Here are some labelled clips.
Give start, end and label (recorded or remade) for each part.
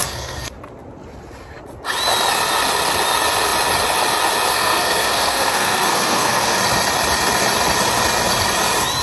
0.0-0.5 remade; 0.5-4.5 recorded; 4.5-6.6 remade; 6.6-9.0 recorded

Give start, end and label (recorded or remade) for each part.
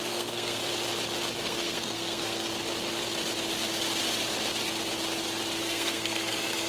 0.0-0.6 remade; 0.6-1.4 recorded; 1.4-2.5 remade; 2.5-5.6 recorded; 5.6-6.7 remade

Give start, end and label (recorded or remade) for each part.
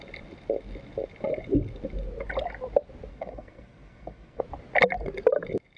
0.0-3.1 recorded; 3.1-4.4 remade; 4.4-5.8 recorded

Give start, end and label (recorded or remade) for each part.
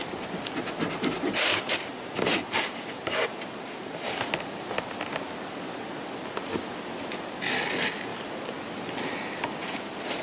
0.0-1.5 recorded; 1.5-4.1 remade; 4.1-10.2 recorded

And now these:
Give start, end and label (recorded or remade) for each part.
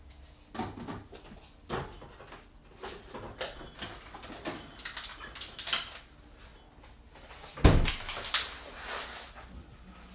0.0-10.1 recorded